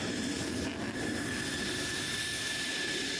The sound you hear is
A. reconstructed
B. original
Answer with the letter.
B